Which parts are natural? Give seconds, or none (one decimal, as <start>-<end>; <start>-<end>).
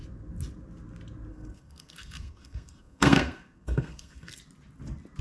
0.0-1.3; 4.4-5.2